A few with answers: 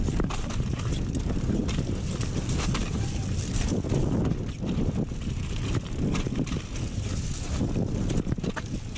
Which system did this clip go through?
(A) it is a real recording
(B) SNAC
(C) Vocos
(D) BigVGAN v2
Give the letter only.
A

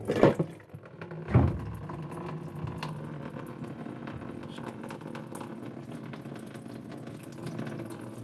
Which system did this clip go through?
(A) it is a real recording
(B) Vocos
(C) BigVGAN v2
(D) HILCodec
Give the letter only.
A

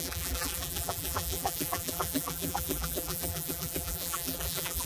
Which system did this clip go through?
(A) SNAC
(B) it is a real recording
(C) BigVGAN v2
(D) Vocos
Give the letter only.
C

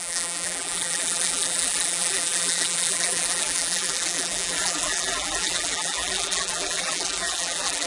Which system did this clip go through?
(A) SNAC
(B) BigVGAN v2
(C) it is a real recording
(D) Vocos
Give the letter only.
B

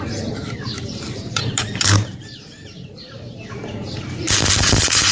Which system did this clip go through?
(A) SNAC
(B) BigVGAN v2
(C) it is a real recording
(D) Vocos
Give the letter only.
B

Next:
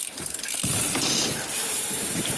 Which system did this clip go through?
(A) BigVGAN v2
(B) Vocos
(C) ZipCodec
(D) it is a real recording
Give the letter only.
A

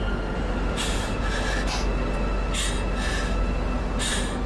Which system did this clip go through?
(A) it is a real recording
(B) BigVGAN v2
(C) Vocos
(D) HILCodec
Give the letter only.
A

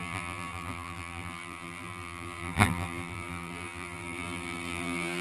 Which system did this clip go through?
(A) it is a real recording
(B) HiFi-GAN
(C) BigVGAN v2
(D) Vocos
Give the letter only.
C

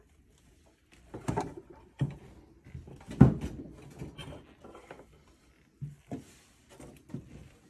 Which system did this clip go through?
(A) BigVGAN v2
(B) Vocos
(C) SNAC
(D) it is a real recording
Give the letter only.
D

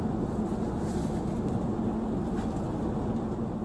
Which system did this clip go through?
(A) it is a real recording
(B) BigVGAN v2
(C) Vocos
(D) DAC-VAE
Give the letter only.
A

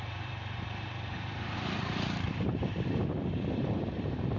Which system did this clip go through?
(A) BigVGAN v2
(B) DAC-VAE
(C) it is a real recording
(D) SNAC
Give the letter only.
A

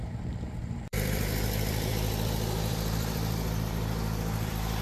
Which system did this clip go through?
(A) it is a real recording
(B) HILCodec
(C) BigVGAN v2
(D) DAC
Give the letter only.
C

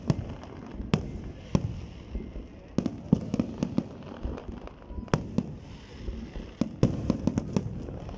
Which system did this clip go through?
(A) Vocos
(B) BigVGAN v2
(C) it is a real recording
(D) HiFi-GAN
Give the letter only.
C